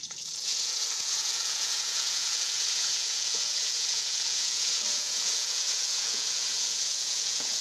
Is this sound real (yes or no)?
no